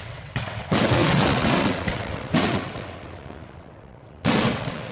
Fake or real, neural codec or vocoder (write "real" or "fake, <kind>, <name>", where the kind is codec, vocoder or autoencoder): fake, vocoder, WaveNeXt